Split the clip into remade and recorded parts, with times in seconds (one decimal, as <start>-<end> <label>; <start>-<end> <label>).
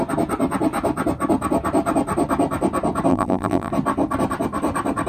0.0-3.1 recorded; 3.1-3.7 remade; 3.7-5.1 recorded